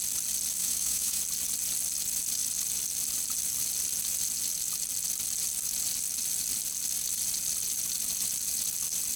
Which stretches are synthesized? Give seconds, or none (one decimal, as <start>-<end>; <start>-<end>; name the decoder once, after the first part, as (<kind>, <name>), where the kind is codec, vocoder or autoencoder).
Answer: 0.6-1.2 (autoencoder, DAC-VAE)